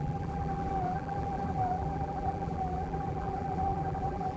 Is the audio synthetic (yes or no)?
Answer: yes